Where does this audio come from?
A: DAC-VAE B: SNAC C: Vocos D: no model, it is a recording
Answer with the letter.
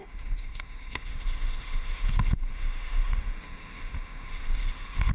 A